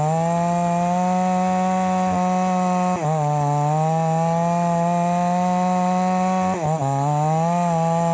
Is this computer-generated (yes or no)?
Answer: no